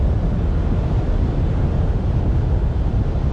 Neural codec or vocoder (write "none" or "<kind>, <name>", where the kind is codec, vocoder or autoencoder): none